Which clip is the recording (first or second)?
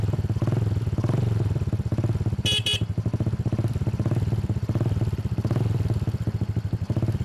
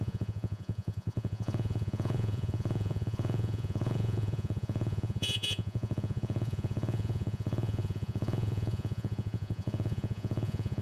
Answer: first